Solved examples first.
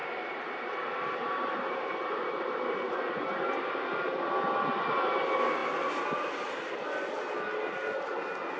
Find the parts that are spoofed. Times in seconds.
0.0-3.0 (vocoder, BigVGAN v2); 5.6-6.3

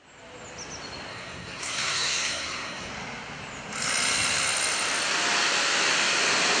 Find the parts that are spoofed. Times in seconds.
1.1-2.9 (codec, SNAC)

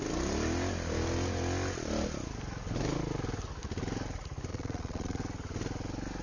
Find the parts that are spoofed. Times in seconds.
4.5-5.2 (vocoder, Vocos)

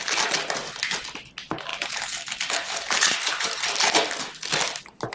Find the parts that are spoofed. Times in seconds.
1.7-3.7 (vocoder, BigVGAN v2)

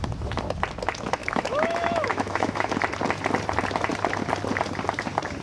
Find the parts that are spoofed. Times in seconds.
1.2-2.7 (autoencoder, DAC-VAE)

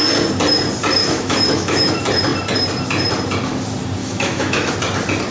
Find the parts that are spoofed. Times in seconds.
1.0-1.9 (autoencoder, DAC-VAE); 4.0-4.7